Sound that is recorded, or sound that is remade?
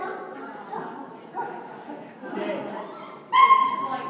recorded